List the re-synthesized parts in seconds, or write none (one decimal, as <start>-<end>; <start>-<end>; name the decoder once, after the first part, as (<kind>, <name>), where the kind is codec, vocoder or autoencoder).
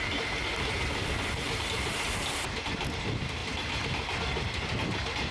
none